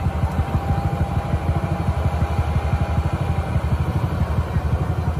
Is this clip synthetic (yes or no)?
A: no